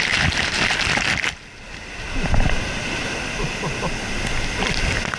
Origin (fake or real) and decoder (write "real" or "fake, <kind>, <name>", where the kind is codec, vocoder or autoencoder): real